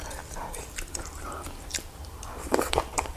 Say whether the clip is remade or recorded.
remade